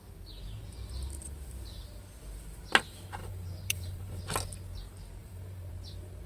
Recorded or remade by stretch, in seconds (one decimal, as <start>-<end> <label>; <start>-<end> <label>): 0.0-3.2 recorded; 3.2-4.2 remade; 4.2-5.2 recorded; 5.2-5.7 remade; 5.7-6.3 recorded